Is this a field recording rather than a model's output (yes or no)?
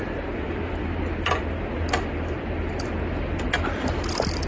yes